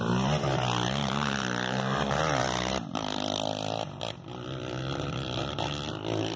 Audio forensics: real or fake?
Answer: real